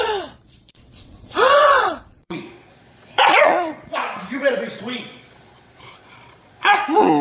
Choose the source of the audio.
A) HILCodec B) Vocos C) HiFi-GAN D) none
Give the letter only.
B